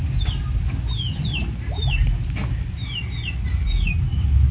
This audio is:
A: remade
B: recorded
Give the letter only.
B